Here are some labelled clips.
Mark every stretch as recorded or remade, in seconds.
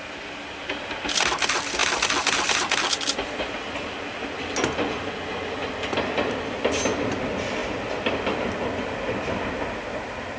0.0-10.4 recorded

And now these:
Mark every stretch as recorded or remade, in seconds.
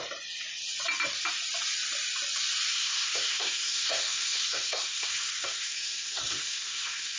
0.0-2.7 recorded; 2.7-7.2 remade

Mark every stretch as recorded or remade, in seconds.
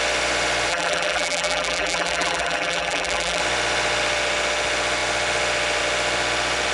0.0-0.7 recorded; 0.7-3.4 remade; 3.4-6.7 recorded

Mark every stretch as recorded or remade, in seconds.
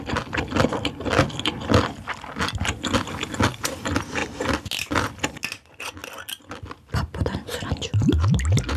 0.0-8.8 recorded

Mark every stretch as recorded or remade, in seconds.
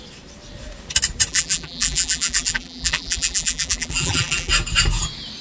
0.0-1.3 recorded; 1.3-4.5 remade; 4.5-5.4 recorded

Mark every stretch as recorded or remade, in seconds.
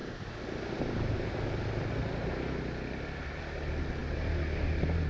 0.0-5.1 recorded